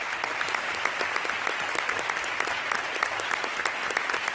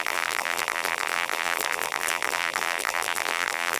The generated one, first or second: second